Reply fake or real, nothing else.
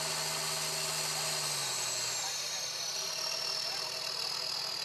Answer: real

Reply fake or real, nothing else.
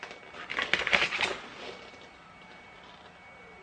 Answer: real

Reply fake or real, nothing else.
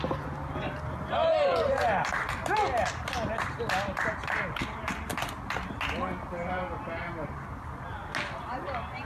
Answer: real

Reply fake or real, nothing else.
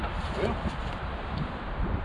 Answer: real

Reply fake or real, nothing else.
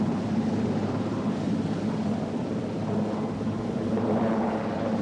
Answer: fake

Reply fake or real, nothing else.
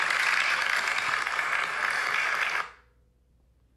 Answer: real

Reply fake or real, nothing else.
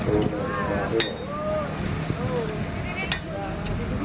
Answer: real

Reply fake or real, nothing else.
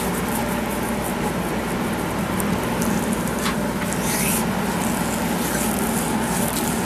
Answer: real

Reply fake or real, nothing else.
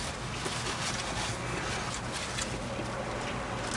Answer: real